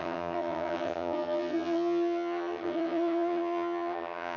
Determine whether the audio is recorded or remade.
remade